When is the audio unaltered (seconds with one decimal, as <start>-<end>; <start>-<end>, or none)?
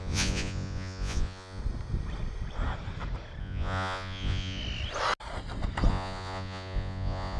1.6-3.4; 4.6-5.9